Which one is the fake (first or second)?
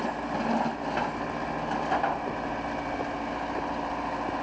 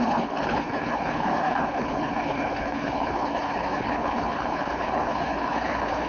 second